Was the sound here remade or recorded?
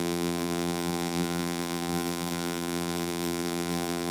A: remade